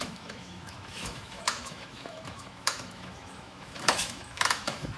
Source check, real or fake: fake